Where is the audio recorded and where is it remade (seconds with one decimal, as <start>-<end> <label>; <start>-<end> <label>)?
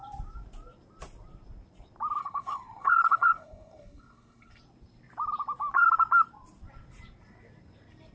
0.0-2.2 recorded; 2.2-4.6 remade; 4.6-8.1 recorded